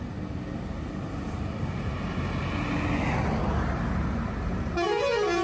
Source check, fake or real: real